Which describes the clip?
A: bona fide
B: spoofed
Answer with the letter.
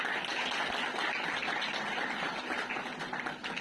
A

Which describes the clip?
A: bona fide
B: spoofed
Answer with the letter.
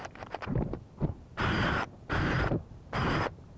A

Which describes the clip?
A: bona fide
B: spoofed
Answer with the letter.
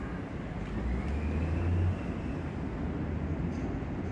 A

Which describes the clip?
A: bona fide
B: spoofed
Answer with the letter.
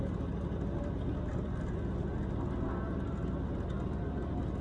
A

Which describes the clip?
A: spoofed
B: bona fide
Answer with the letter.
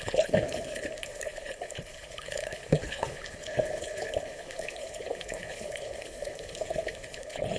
A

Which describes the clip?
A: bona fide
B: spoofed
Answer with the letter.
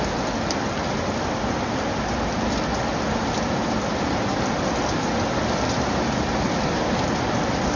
A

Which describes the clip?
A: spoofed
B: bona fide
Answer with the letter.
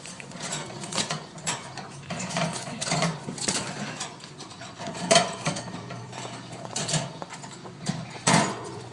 A